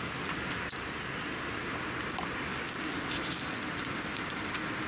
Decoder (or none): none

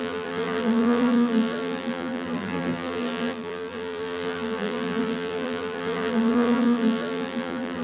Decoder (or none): vocoder, BigVGAN v2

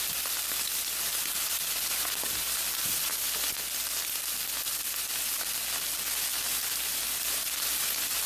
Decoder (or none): none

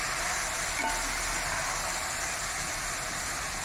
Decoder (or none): none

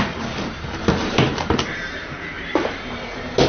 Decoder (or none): vocoder, BigVGAN v2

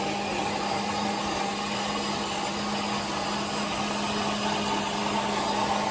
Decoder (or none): none